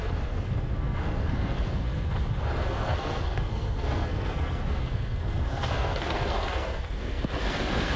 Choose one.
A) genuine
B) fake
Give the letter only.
B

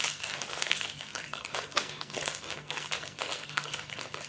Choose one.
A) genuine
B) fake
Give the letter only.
B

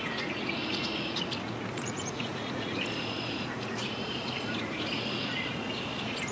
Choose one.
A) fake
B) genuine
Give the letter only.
A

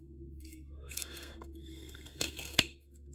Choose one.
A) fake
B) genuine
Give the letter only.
A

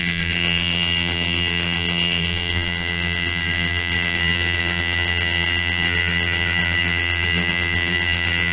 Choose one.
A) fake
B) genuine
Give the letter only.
A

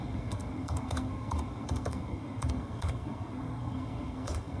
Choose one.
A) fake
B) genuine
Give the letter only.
A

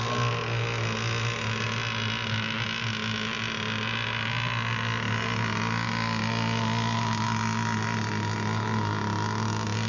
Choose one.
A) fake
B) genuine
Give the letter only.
B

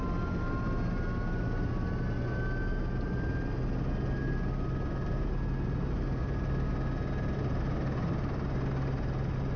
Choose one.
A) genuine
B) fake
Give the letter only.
A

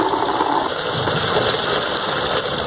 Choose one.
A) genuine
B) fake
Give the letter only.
A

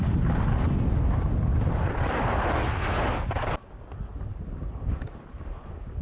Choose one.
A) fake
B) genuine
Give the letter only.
B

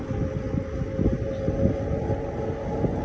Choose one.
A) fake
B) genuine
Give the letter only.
B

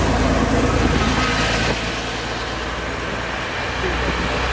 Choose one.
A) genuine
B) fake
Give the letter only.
A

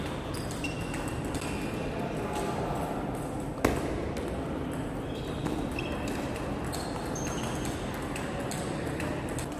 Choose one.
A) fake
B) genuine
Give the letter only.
B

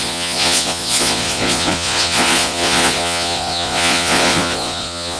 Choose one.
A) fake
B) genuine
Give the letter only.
A